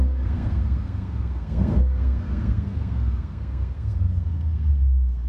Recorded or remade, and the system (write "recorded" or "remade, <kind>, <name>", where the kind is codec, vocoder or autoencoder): remade, codec, SNAC